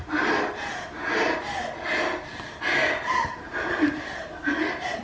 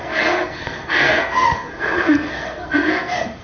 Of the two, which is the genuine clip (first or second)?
first